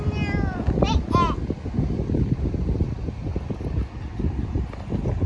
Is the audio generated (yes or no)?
no